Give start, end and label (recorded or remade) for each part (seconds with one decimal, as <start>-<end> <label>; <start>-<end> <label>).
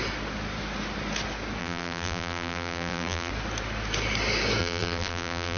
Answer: 0.0-1.6 recorded; 1.6-3.3 remade; 3.3-4.6 recorded; 4.6-5.6 remade